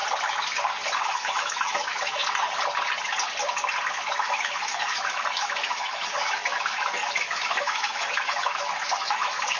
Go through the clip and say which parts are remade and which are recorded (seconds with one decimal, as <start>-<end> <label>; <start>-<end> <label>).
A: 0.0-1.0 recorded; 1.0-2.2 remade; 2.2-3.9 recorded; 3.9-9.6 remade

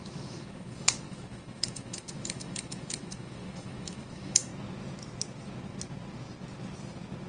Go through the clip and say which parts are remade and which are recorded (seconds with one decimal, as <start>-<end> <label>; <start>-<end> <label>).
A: 0.0-4.5 remade; 4.5-7.3 recorded

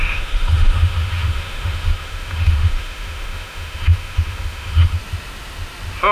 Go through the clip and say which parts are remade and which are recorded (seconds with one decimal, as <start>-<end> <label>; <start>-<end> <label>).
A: 0.0-5.0 remade; 5.0-6.1 recorded

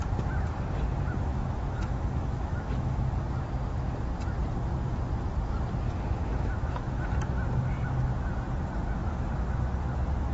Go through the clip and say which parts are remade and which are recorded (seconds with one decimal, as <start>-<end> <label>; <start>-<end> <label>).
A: 0.0-1.3 recorded; 1.3-3.1 remade; 3.1-6.2 recorded; 6.2-7.1 remade; 7.1-9.0 recorded; 9.0-9.6 remade; 9.6-10.3 recorded

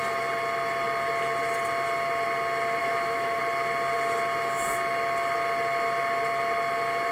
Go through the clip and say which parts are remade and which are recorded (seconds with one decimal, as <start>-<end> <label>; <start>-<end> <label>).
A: 0.0-2.8 recorded; 2.8-3.4 remade; 3.4-7.1 recorded